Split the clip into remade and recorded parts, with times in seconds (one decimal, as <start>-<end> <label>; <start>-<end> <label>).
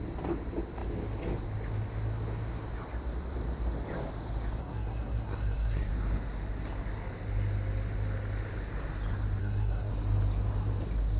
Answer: 0.0-4.6 recorded; 4.6-5.9 remade; 5.9-9.4 recorded; 9.4-9.9 remade; 9.9-11.2 recorded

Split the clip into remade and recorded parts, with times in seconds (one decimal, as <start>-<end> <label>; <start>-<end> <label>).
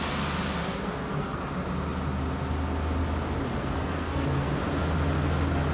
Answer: 0.0-0.6 recorded; 0.6-1.4 remade; 1.4-3.6 recorded; 3.6-4.5 remade; 4.5-5.7 recorded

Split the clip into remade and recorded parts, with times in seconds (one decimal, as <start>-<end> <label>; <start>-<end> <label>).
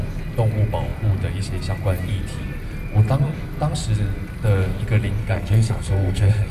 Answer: 0.0-5.2 recorded; 5.2-6.5 remade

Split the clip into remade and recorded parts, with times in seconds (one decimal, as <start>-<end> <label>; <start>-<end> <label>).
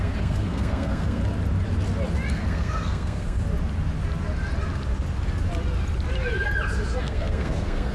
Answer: 0.0-1.2 remade; 1.2-2.3 recorded; 2.3-3.4 remade; 3.4-7.0 recorded; 7.0-7.9 remade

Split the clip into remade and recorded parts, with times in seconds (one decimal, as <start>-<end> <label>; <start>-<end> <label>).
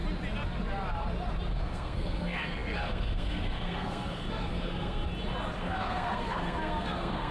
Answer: 0.0-1.5 recorded; 1.5-5.0 remade; 5.0-5.6 recorded; 5.6-7.3 remade